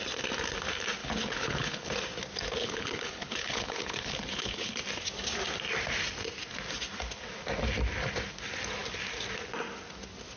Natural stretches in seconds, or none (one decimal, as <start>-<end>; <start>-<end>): 0.0-1.0; 1.9-2.6; 4.8-10.4